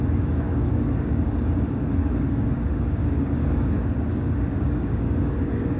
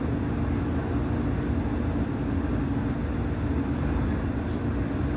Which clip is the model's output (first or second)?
first